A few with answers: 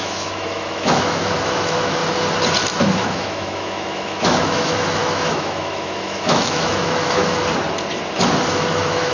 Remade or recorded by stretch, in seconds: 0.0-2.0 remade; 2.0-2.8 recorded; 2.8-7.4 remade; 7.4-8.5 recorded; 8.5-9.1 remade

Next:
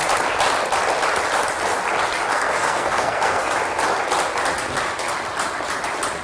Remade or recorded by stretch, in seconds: 0.0-2.3 recorded; 2.3-3.5 remade; 3.5-6.2 recorded